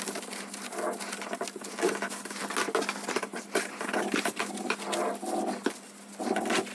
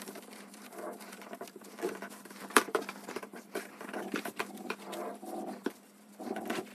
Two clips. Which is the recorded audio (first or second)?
first